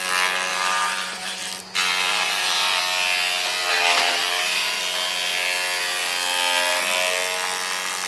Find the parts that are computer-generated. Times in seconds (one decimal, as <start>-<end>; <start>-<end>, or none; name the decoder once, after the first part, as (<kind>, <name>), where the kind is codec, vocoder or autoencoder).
0.5-1.5 (vocoder, BigVGAN v2); 2.1-2.8; 3.7-4.8